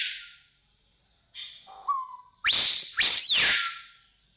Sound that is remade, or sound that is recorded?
remade